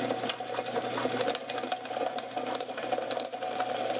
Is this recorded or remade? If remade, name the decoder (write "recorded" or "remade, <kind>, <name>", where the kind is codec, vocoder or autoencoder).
recorded